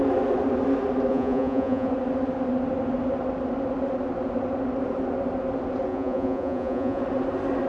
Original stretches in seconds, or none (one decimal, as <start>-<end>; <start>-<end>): 0.0-1.1; 1.9-5.9; 7.0-7.7